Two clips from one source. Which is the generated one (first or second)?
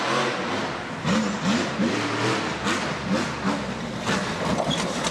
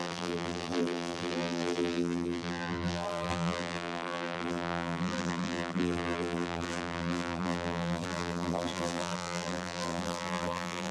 second